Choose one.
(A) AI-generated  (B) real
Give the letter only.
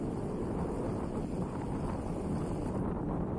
B